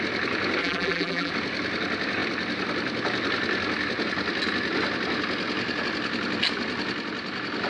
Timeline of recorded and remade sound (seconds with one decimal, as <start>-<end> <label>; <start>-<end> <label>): 0.0-0.6 recorded; 0.6-1.3 remade; 1.3-7.7 recorded